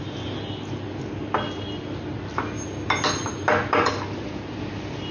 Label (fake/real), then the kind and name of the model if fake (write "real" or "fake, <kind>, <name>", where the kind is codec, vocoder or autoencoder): real